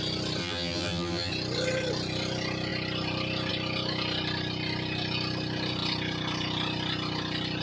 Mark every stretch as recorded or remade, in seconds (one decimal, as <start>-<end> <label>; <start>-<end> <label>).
0.0-0.4 recorded; 0.4-1.3 remade; 1.3-7.6 recorded